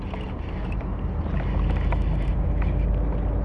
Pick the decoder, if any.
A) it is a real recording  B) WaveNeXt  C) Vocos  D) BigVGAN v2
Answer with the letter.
A